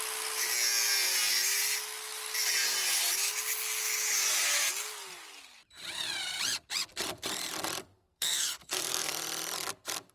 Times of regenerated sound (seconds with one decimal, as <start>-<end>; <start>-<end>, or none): 7.9-9.1